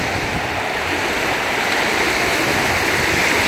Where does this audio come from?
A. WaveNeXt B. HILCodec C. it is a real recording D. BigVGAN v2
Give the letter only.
C